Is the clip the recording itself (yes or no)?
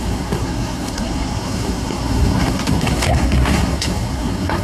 no